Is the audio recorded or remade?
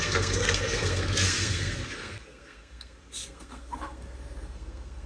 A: remade